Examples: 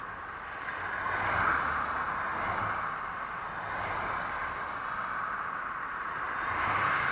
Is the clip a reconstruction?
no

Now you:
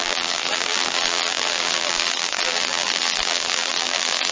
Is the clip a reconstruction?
yes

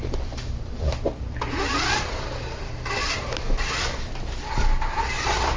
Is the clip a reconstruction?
no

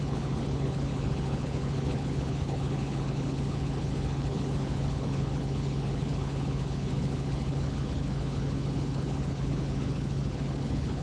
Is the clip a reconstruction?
yes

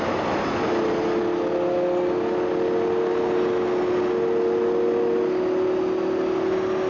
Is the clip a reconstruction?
no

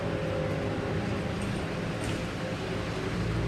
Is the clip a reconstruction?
no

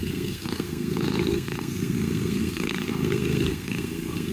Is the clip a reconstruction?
yes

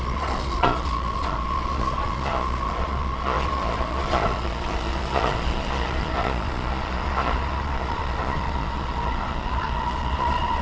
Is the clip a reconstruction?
yes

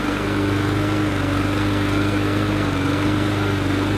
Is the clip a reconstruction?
yes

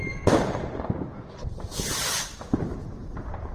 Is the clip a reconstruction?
no